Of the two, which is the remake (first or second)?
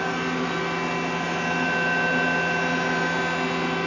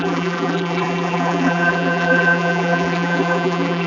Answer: second